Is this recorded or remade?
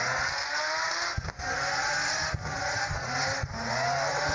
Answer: recorded